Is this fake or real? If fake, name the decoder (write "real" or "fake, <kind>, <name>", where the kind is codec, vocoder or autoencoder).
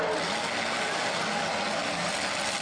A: real